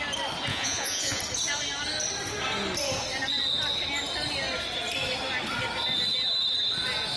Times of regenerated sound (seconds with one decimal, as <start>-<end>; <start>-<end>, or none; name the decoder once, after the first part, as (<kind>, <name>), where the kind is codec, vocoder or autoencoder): 0.5-1.2 (vocoder, Vocos)